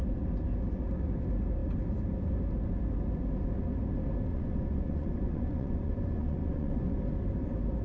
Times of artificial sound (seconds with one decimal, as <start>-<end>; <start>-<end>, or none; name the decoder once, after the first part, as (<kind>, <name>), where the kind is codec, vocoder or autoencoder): 4.3-7.0 (vocoder, Vocos)